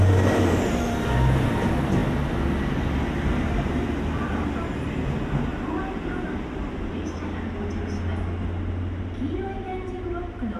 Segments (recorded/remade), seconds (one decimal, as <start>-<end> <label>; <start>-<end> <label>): 0.0-10.6 recorded